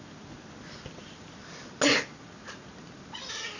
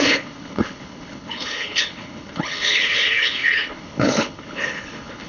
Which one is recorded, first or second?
first